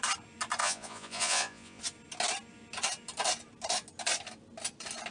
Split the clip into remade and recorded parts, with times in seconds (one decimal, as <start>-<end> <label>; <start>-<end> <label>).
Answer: 0.0-0.6 recorded; 0.6-1.8 remade; 1.8-5.1 recorded